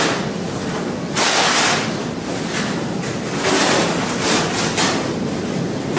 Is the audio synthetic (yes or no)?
no